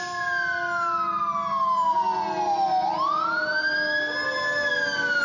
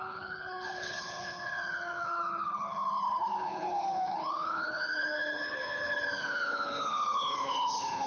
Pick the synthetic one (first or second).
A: second